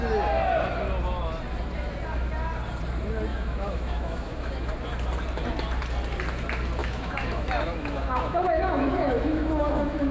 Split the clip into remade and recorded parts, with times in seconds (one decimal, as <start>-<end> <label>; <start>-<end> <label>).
0.0-3.3 recorded; 3.3-4.7 remade; 4.7-6.8 recorded; 6.8-10.1 remade